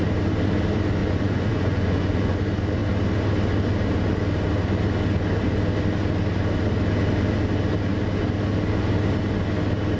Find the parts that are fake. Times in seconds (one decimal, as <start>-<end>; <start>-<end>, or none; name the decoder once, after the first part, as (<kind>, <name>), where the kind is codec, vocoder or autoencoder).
1.0-2.4 (vocoder, Vocos)